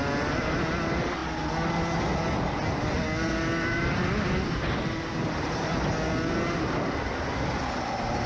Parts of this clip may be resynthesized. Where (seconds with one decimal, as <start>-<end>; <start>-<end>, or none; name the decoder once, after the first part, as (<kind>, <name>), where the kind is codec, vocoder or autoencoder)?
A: none